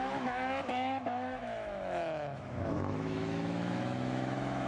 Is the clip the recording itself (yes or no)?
no